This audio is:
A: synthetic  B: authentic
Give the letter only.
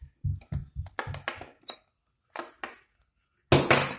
B